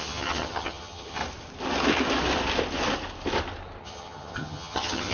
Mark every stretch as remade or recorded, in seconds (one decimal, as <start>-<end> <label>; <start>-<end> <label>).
0.0-1.2 remade; 1.2-3.8 recorded; 3.8-5.1 remade